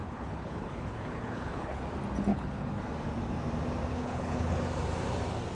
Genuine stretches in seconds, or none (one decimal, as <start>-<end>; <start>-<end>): 1.8-2.3; 2.8-3.9; 4.6-5.5